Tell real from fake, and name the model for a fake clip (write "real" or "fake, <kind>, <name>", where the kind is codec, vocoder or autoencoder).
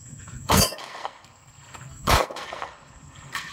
fake, codec, SNAC